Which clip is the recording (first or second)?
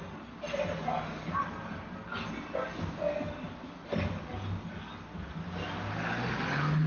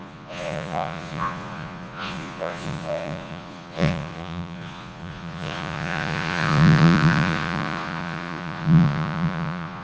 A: first